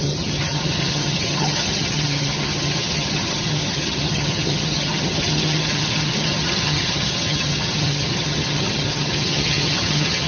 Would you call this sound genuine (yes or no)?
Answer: no